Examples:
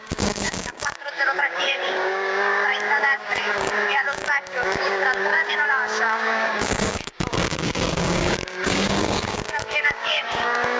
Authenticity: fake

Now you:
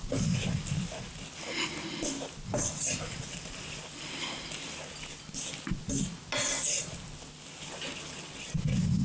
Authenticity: real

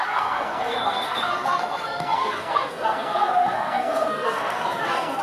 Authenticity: fake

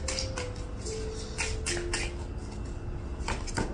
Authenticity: real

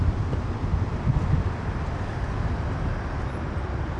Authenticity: real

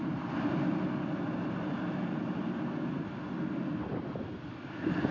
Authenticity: real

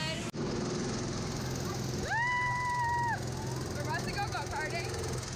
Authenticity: real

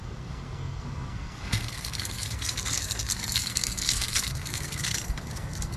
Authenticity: fake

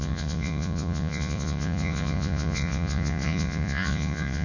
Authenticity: fake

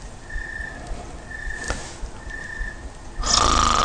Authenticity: real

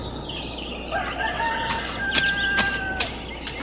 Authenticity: real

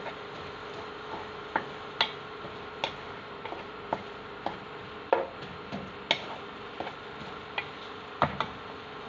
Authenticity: real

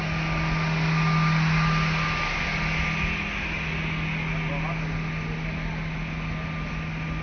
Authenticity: real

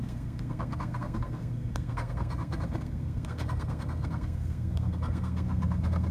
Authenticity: fake